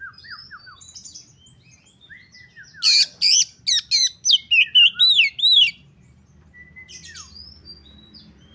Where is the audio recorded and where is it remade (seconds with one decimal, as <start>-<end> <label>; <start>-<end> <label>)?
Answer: 0.0-8.5 recorded